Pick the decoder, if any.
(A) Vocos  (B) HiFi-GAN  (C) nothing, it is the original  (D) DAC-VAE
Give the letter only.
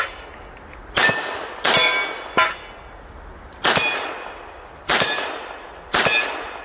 C